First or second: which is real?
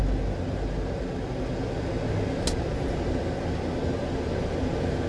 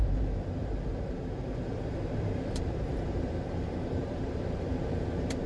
first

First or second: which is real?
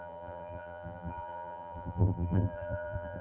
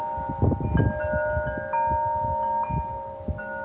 second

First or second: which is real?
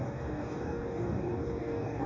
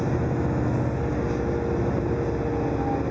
second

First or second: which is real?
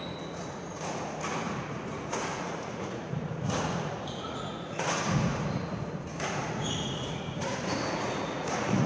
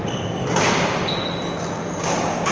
second